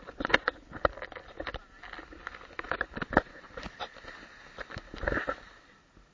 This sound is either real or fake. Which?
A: real